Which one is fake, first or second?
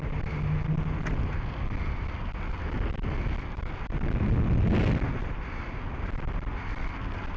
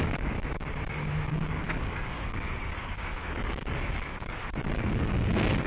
second